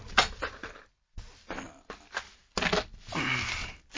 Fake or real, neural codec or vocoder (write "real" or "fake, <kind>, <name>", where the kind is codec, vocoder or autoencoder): real